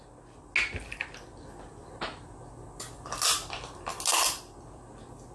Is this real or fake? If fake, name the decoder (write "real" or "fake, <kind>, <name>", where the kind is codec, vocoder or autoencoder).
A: real